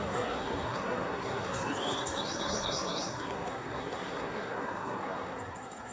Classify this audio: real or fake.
fake